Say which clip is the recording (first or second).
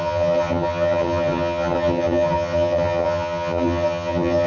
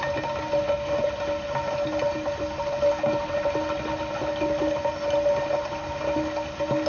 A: second